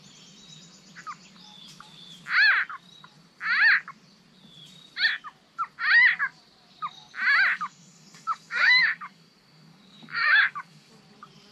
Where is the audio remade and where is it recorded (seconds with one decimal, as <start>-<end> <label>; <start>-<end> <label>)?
0.0-7.5 recorded; 7.5-10.9 remade; 10.9-11.5 recorded